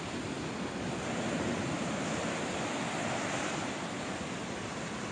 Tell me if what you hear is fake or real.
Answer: real